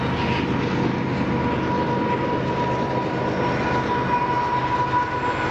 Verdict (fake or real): real